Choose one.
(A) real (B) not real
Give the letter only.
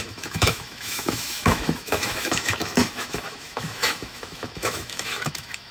B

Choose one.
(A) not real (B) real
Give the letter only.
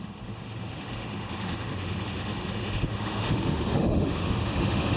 A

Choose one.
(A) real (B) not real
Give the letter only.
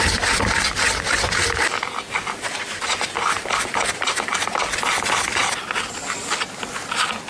A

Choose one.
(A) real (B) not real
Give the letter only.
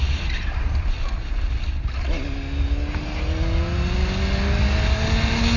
A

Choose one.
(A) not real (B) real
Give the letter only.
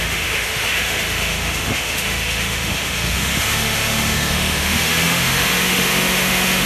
A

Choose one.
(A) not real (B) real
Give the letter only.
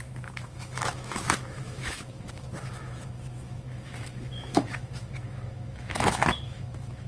A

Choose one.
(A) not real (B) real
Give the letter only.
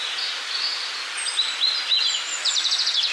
B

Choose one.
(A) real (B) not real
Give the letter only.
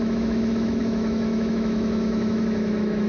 B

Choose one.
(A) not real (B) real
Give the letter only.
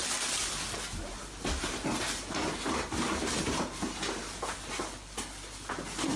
B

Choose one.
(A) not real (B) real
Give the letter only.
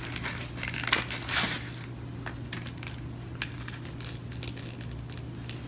B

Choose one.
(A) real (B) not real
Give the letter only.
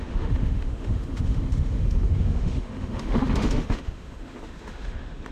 B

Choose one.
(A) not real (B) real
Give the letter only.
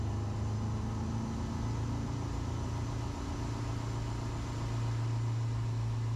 B